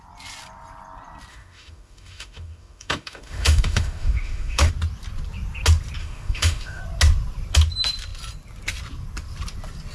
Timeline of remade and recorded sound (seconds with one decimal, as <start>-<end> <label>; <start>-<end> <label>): 0.0-1.3 recorded; 1.3-4.7 remade; 4.7-6.0 recorded; 6.0-6.8 remade; 6.8-9.9 recorded